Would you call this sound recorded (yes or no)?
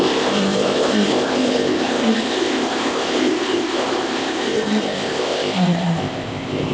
no